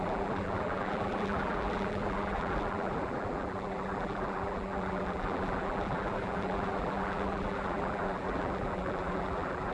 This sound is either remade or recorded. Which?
remade